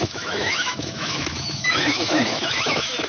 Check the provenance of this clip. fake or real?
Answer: fake